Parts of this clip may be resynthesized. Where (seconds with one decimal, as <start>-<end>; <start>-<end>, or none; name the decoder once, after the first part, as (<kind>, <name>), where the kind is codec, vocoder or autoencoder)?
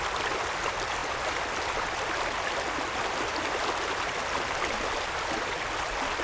none